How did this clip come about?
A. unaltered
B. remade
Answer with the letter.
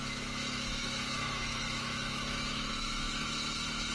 B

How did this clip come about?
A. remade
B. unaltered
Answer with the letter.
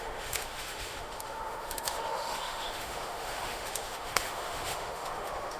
A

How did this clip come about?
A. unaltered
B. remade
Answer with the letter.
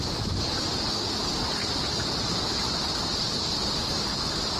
A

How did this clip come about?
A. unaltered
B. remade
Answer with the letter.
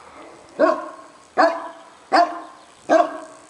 A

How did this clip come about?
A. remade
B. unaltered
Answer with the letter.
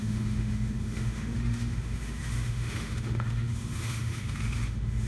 A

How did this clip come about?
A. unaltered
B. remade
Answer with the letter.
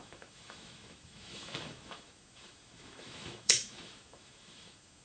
B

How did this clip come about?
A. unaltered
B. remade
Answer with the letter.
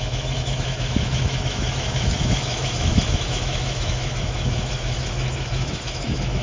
B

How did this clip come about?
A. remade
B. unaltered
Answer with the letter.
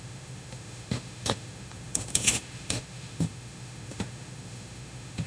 A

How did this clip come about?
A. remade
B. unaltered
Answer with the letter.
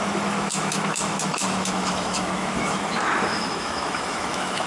A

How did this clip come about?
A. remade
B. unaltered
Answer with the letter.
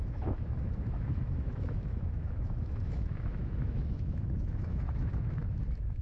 A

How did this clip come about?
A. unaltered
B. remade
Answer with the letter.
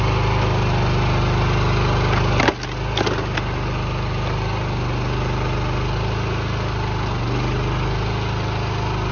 A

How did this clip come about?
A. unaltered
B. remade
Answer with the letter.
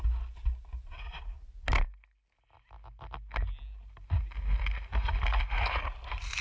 A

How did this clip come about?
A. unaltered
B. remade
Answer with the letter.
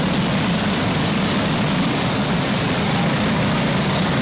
A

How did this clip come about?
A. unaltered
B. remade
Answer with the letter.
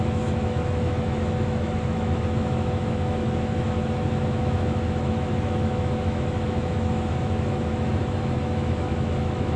B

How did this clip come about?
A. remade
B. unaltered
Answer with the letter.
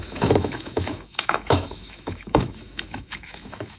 A